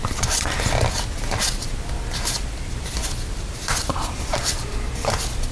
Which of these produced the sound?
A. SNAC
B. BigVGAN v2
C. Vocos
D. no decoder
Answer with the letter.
B